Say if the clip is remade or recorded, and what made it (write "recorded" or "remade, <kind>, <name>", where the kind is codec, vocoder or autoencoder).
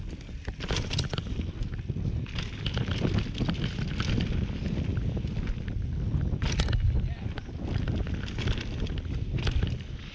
recorded